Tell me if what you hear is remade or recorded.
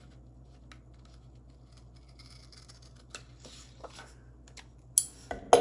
recorded